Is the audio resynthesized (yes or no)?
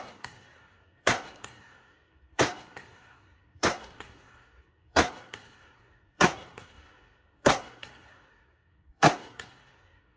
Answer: yes